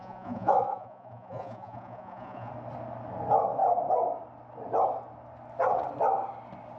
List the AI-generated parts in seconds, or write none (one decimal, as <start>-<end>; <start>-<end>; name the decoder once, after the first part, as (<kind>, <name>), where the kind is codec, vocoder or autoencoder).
0.0-2.5 (vocoder, Vocos)